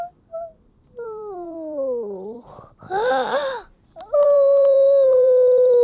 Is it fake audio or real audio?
fake